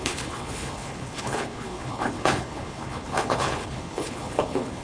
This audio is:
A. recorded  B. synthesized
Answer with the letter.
B